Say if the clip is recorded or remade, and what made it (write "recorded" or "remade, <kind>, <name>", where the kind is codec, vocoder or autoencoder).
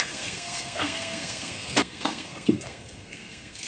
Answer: remade, codec, SNAC